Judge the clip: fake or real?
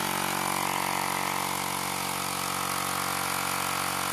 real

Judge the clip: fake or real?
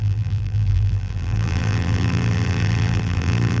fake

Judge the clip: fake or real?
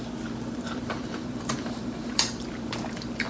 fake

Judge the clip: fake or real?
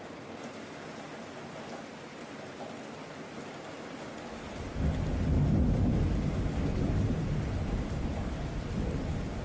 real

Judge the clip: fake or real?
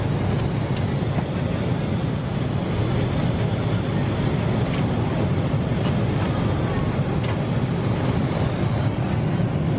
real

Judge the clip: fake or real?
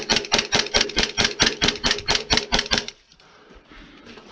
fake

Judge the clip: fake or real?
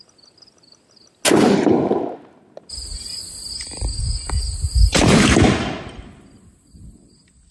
real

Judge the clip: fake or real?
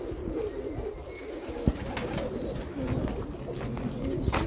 real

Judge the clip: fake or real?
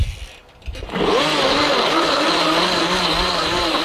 real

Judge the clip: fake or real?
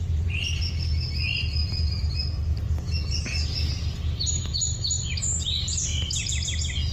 real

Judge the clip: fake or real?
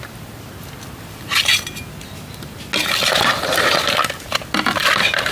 real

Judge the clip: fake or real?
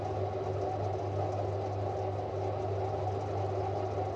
real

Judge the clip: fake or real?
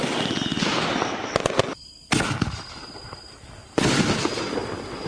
real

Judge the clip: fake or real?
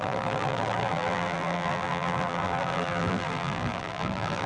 fake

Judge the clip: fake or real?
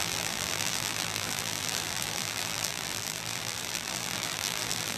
fake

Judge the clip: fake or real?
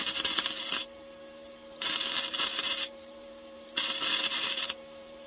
fake